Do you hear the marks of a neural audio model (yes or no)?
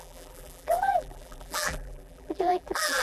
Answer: yes